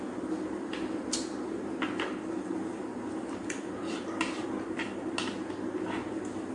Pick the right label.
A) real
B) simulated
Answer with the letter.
A